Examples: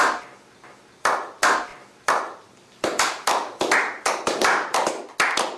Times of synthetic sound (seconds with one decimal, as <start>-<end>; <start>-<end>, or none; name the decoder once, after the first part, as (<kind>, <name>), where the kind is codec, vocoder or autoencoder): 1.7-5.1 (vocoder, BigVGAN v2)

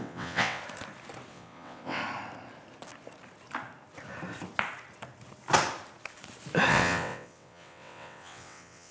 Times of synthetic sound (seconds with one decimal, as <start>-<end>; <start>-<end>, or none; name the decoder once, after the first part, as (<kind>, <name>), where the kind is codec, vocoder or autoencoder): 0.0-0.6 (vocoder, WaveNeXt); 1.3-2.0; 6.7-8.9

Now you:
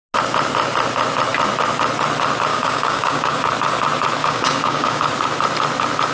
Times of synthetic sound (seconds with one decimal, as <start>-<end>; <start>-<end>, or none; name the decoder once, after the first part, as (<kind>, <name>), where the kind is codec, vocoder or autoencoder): 2.5-3.5 (codec, DAC); 4.2-5.0

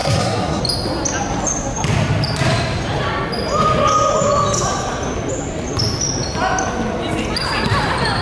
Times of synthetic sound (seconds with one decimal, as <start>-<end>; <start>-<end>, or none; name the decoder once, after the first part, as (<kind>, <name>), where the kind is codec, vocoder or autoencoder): 0.0-0.6 (codec, SNAC)